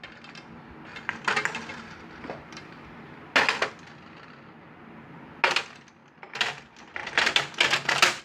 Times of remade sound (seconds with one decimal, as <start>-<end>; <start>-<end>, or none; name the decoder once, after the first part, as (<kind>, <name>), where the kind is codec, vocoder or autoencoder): 1.7-3.0 (vocoder, BigVGAN v2)

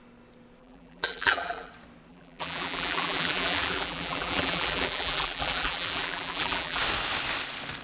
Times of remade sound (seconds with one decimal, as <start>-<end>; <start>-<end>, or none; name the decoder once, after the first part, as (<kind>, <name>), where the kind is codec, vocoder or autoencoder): 0.6-1.7 (vocoder, BigVGAN v2); 2.1-6.8

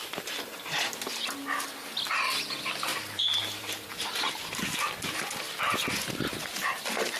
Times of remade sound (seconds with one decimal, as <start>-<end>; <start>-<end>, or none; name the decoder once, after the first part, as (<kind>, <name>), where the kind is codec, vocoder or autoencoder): 0.0-0.8 (vocoder, BigVGAN v2); 2.9-4.6

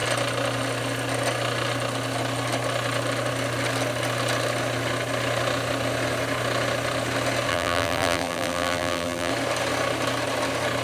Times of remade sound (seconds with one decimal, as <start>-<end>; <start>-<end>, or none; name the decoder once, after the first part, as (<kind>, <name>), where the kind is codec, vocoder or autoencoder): 7.5-9.3 (vocoder, BigVGAN v2)

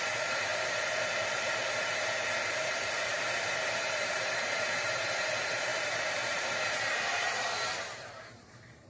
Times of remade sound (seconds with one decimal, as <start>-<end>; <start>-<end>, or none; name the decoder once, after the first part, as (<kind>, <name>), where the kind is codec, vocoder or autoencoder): 0.0-8.9 (vocoder, BigVGAN v2)

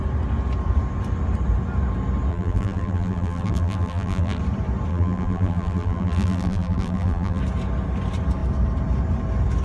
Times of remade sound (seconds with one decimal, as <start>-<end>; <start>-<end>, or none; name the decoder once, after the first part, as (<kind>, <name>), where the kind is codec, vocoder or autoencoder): 2.3-4.4 (vocoder, BigVGAN v2); 4.9-7.4

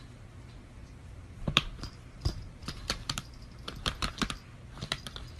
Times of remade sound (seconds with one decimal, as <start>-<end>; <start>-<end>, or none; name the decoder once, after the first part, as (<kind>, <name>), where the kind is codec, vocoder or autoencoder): 0.8-1.9 (vocoder, BigVGAN v2); 2.6-4.1